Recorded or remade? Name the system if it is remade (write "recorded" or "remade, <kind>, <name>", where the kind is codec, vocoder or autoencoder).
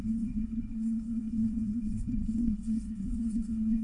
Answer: remade, codec, SNAC